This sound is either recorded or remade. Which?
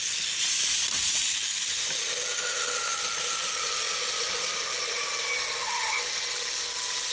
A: recorded